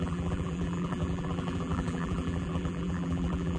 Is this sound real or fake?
fake